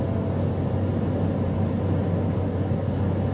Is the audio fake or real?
real